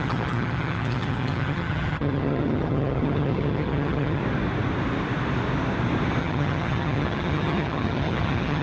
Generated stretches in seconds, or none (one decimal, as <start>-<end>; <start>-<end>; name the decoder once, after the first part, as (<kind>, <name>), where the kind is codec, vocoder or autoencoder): 0.0-4.2 (vocoder, HiFi-GAN); 6.2-8.6